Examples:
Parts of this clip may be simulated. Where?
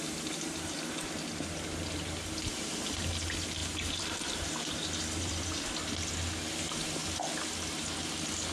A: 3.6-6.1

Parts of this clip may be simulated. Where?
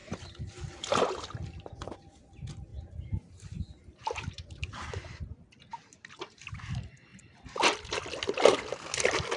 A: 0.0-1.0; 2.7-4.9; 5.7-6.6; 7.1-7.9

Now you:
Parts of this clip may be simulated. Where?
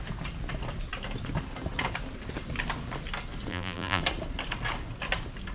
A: 3.5-4.0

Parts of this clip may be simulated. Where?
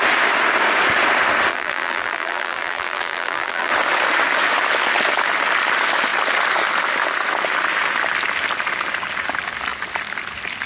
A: 1.5-3.7